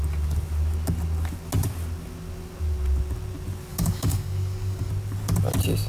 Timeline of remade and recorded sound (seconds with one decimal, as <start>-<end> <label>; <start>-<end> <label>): 0.0-3.7 recorded; 3.7-4.9 remade; 4.9-5.9 recorded